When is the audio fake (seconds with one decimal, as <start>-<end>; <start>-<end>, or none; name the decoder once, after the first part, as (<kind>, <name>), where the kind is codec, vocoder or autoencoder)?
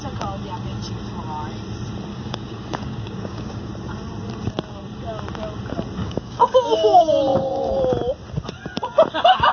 2.1-3.7 (codec, DAC); 6.0-7.2